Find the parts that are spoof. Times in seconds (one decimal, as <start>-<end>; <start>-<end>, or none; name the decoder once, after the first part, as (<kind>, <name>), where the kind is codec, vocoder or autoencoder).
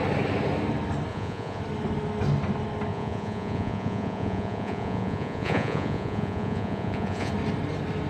1.1-1.6 (vocoder, Vocos); 2.9-7.3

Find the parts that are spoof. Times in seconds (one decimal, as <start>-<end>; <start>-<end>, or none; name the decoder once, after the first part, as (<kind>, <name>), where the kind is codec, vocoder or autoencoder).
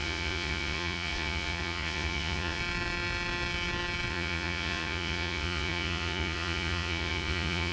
0.0-2.6 (vocoder, Vocos); 4.1-7.7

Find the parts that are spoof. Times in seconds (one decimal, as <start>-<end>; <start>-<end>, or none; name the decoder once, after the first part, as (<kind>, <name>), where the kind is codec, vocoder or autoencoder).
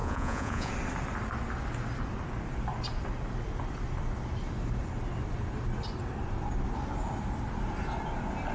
0.0-0.7 (vocoder, Vocos)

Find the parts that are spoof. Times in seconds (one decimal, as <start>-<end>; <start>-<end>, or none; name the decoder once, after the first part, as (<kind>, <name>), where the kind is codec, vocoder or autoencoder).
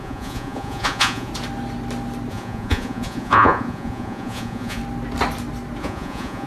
0.0-1.3 (vocoder, Vocos); 2.3-4.8; 5.8-6.5